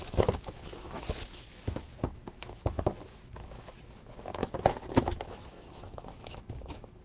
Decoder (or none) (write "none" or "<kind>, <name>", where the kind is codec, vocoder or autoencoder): autoencoder, DAC-VAE